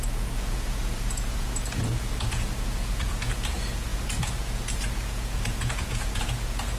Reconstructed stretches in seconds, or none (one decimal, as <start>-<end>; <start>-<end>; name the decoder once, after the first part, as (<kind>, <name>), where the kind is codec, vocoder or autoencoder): 0.0-6.8 (vocoder, Vocos)